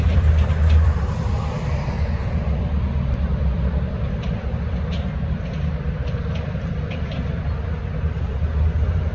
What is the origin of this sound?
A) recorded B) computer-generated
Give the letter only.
B